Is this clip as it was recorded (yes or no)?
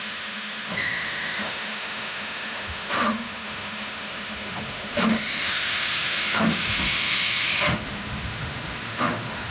no